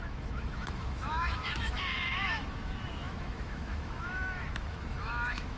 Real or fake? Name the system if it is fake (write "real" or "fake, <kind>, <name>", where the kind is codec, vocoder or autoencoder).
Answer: fake, autoencoder, DAC-VAE